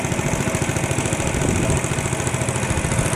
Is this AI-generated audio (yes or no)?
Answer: no